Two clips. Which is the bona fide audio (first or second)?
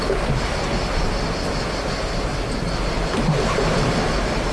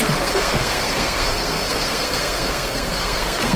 first